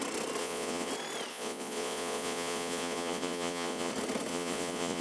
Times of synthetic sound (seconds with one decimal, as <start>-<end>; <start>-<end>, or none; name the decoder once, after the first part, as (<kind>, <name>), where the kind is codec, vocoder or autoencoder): 0.4-0.9 (vocoder, Vocos); 1.3-3.9; 4.3-5.0